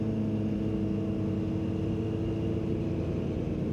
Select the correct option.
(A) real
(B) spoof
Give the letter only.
A